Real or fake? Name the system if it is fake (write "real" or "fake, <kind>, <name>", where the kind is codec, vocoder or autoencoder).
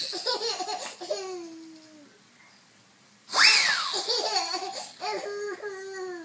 real